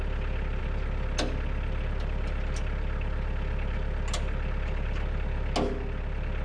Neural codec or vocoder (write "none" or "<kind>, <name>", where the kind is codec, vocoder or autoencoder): none